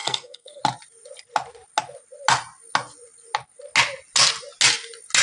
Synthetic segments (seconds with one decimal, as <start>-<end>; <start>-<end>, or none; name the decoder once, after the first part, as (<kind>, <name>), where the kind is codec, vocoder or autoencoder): 0.0-0.6 (codec, SNAC)